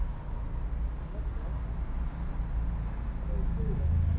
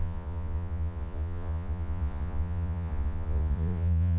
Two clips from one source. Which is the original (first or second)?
first